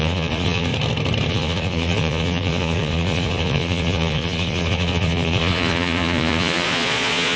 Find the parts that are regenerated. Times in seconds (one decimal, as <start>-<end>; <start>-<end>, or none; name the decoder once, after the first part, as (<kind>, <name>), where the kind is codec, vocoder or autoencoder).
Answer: 0.0-0.7 (vocoder, Vocos); 1.3-7.4